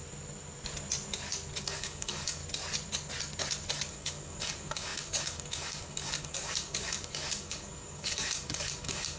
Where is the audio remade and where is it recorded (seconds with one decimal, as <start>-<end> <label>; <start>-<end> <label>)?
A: 0.0-1.6 recorded; 1.6-2.4 remade; 2.4-3.9 recorded; 3.9-9.2 remade